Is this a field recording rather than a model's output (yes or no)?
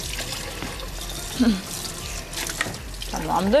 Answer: yes